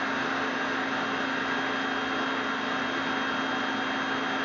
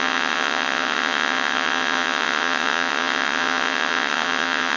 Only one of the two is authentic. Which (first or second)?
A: first